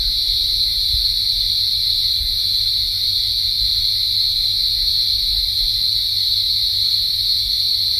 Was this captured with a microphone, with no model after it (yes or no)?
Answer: yes